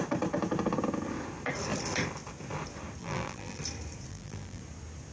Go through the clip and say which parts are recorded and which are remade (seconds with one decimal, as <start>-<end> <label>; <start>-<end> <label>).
0.0-3.0 recorded; 3.0-3.6 remade; 3.6-4.1 recorded; 4.1-4.6 remade; 4.6-5.1 recorded